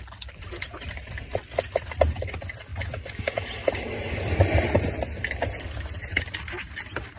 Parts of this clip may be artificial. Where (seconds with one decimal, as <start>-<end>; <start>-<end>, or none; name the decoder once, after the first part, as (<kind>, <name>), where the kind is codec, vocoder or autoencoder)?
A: none